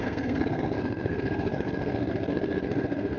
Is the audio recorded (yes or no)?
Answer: no